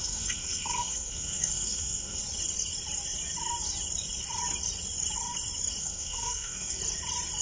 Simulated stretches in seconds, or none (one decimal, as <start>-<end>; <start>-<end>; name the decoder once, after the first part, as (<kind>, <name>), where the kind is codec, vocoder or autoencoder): 0.0-2.2 (codec, SNAC); 5.8-6.8